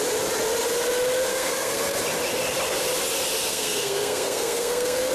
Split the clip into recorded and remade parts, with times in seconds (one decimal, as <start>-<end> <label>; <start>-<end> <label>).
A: 0.0-1.3 recorded; 1.3-1.8 remade; 1.8-3.5 recorded; 3.5-5.1 remade